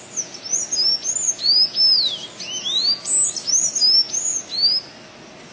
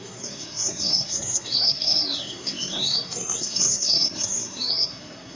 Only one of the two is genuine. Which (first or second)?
first